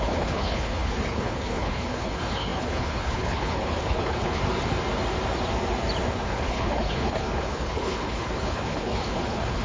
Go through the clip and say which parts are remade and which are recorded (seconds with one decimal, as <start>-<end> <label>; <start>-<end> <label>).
0.0-4.4 remade; 4.4-6.1 recorded; 6.1-9.6 remade